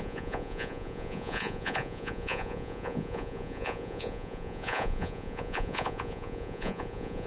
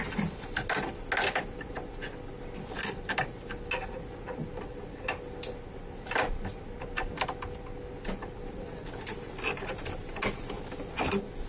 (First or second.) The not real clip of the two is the first